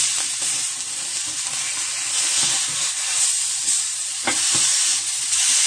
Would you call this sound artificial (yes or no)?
no